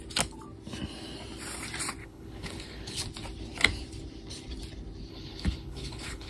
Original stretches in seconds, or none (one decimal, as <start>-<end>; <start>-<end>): 0.0-2.0; 3.0-5.1